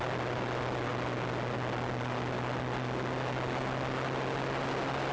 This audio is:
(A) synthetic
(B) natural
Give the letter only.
B